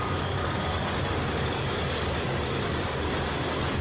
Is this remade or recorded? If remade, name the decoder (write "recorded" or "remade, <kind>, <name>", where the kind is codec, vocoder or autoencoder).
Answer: remade, codec, DAC